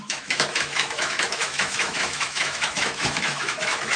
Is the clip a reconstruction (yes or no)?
yes